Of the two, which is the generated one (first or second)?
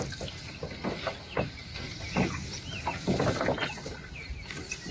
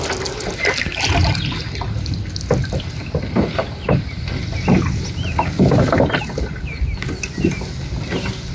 first